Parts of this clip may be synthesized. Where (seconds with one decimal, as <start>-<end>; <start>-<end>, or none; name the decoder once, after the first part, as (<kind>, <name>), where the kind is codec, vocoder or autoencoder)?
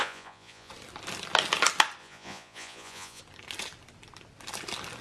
0.0-0.7 (vocoder, Vocos); 2.0-3.2